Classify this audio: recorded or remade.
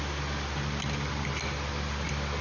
recorded